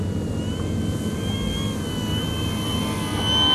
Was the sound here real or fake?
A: real